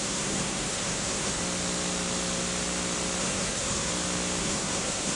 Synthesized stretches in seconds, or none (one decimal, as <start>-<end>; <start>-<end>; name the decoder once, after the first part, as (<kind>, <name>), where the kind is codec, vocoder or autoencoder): 0.0-1.4 (codec, SNAC); 3.2-3.9; 4.4-5.2